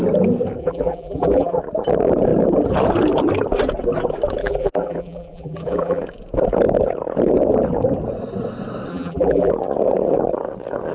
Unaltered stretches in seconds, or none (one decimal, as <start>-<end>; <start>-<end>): 0.0-0.6; 1.6-4.4; 6.0-8.9; 9.5-10.9